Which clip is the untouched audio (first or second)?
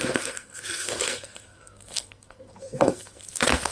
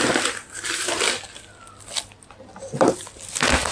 second